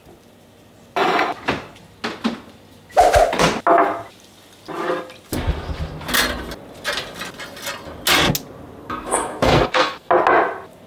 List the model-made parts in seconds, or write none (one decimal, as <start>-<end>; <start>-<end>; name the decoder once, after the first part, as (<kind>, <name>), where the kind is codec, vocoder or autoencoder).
8.8-10.1 (codec, SNAC)